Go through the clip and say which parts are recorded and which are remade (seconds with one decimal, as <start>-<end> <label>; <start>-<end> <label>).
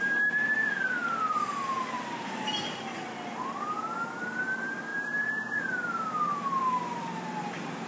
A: 0.0-4.9 recorded; 4.9-5.6 remade; 5.6-7.9 recorded